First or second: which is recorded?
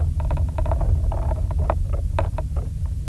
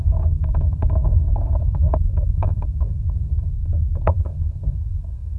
first